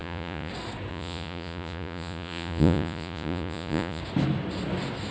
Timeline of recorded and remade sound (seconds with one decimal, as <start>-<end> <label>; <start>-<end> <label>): 0.0-0.5 remade; 0.5-0.9 recorded; 0.9-4.0 remade; 4.0-5.1 recorded